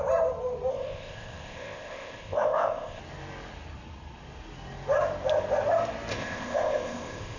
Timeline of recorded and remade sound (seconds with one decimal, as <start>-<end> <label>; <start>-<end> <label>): 0.0-0.7 recorded; 0.7-3.0 remade; 3.0-6.1 recorded; 6.1-7.4 remade